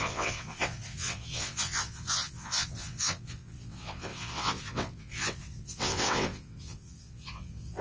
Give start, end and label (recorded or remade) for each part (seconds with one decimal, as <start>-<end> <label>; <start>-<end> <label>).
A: 0.0-7.8 remade